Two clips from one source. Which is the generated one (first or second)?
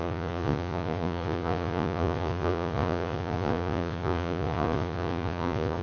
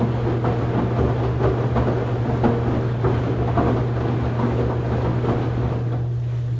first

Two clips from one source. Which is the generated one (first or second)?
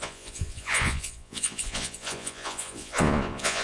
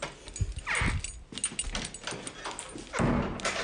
first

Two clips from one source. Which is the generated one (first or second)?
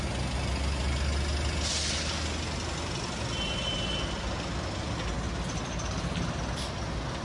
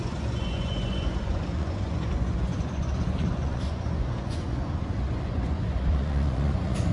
second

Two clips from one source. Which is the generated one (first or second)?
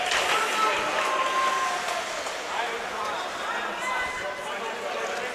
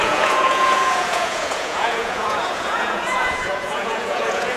second